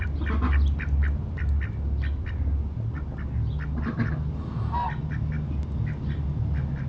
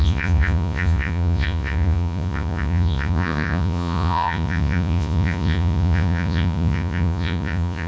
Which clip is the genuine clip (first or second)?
first